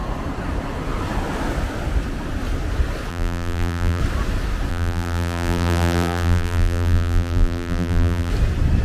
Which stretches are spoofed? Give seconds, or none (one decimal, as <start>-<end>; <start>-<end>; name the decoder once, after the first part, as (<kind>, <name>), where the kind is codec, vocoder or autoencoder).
3.1-4.0 (vocoder, BigVGAN v2); 4.7-8.3